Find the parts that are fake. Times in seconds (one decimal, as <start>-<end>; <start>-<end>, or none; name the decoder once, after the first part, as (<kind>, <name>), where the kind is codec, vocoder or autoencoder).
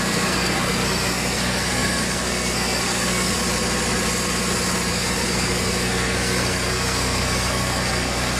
0.0-3.4 (codec, SNAC); 4.9-8.4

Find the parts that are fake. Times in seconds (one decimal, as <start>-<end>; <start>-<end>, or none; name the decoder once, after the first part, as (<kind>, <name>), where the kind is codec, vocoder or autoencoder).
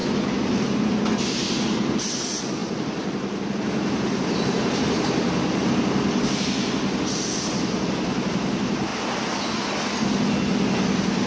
none